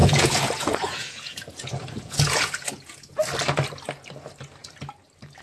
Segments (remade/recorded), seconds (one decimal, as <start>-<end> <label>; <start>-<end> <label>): 0.0-3.2 remade; 3.2-5.4 recorded